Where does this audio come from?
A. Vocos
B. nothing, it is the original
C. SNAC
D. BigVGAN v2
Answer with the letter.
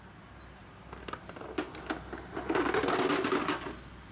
B